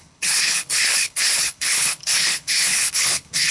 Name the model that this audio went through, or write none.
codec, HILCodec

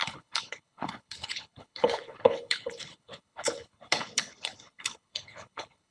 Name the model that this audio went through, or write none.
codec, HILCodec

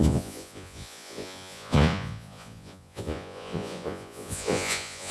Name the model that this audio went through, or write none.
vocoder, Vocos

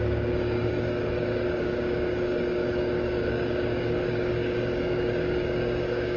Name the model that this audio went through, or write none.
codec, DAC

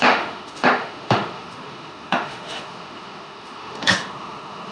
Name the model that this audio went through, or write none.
autoencoder, DAC-VAE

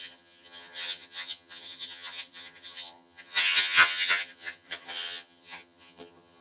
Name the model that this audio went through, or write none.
vocoder, HiFi-GAN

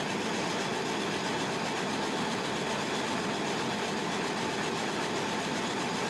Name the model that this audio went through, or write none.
none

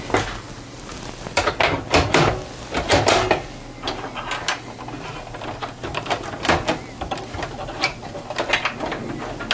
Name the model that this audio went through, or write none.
none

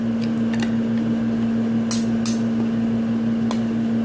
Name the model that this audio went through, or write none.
none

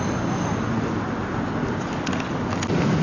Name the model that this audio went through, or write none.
none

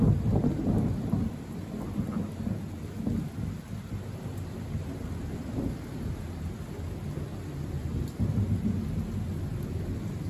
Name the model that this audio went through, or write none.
none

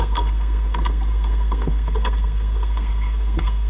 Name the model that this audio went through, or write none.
codec, SNAC